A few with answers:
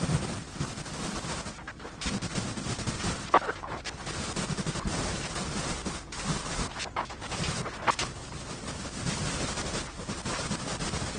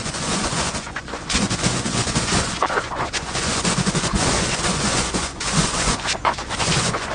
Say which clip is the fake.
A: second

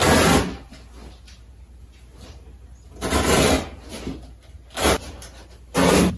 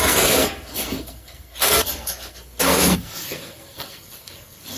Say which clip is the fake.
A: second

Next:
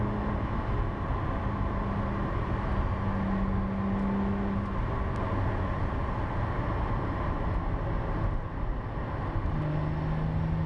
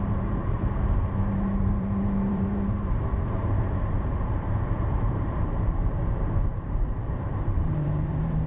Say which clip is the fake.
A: second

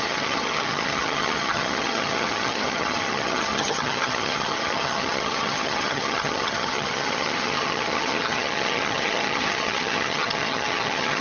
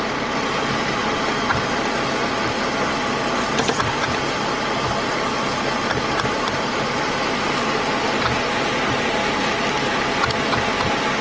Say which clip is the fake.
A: first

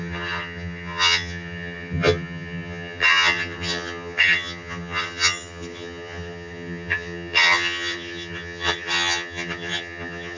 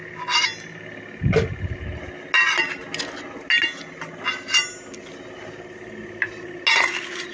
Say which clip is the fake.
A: first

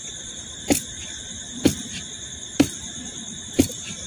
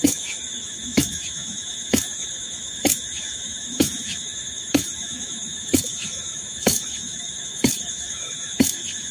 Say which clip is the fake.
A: second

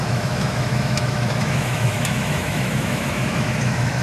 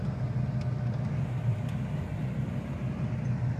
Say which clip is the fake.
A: first